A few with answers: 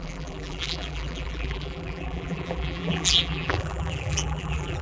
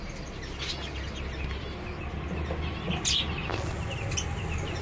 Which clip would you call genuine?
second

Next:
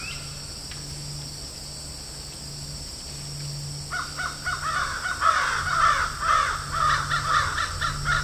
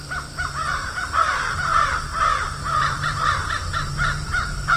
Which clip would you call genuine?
first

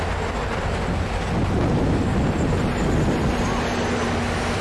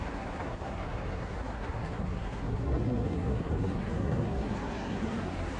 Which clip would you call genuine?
first